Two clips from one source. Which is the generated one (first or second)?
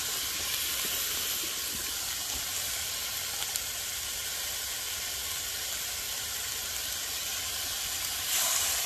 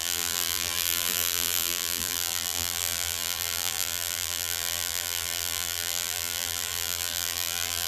second